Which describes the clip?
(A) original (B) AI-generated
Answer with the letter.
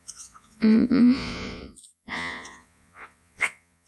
B